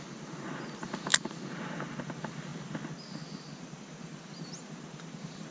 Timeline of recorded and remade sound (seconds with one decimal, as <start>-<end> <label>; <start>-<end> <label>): 0.0-5.5 recorded